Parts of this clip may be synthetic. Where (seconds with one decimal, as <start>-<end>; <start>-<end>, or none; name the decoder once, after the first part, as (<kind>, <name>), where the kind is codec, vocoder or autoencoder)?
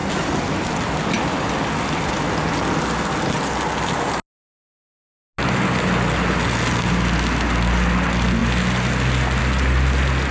none